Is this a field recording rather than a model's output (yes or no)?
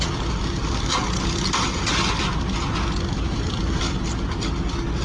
yes